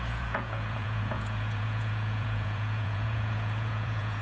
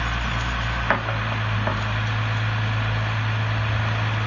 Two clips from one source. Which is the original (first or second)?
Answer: second